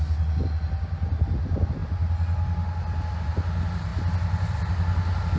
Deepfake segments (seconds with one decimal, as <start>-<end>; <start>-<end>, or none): none